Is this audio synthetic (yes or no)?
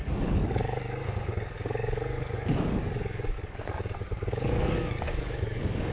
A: yes